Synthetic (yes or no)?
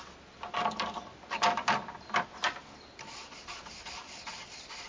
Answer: no